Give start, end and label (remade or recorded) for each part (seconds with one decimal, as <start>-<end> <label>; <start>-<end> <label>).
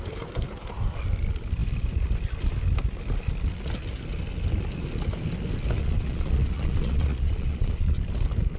0.0-5.8 recorded; 5.8-8.0 remade; 8.0-8.6 recorded